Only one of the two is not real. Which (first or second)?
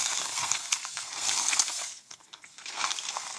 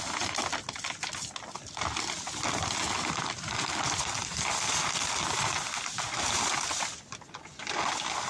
first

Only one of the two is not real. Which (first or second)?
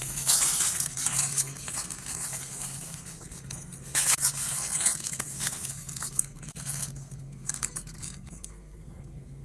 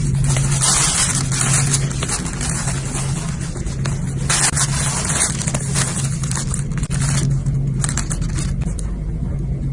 first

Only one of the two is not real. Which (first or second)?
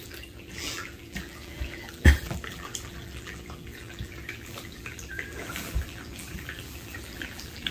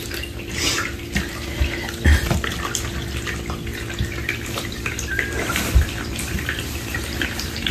first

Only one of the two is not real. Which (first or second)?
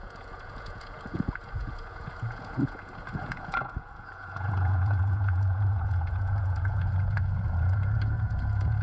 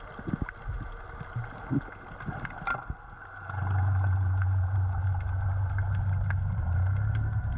first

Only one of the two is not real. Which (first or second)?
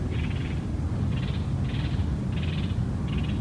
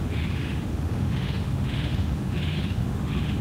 second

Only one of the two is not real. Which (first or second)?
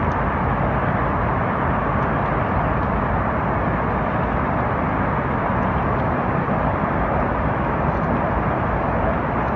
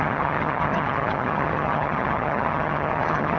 second